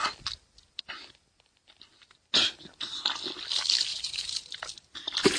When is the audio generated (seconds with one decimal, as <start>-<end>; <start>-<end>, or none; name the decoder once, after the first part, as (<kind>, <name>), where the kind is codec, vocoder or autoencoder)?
3.9-4.6 (vocoder, BigVGAN v2)

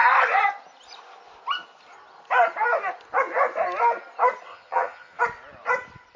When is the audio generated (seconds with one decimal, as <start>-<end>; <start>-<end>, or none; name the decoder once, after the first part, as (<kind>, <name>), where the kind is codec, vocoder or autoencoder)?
4.5-5.2 (vocoder, HiFi-GAN)

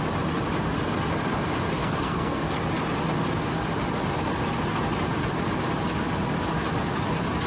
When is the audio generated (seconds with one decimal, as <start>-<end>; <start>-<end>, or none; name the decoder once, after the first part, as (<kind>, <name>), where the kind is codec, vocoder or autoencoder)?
1.8-2.6 (codec, SNAC)

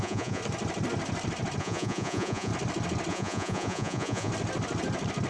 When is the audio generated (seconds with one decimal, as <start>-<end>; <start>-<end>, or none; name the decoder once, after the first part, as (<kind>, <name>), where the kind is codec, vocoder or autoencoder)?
0.0-0.4 (vocoder, Vocos); 1.6-2.5; 3.1-4.3

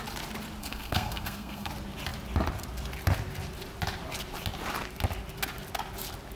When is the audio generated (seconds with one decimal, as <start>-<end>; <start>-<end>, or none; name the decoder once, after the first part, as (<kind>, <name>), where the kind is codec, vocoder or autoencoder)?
0.6-1.7 (codec, SNAC)